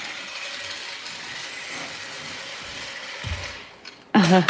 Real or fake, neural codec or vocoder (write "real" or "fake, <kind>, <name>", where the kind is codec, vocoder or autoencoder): real